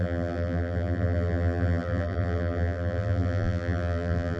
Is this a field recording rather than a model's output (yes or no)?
no